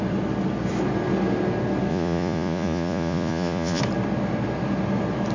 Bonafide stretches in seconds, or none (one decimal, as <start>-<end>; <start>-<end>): 0.0-1.9; 3.8-5.3